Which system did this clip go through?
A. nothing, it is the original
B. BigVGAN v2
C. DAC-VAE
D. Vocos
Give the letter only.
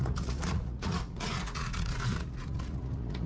D